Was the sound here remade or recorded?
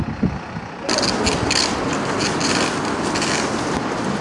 recorded